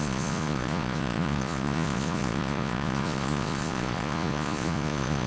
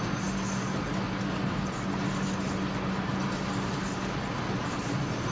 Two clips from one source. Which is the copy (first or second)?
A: first